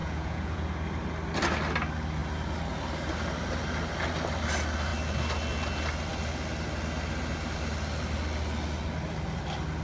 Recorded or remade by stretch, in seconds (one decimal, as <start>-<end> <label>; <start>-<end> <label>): 0.0-0.7 remade; 0.7-9.8 recorded